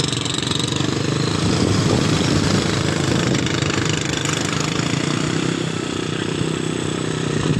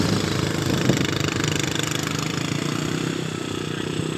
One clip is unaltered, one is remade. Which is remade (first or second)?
first